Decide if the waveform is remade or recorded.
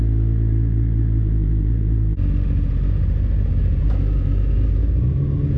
recorded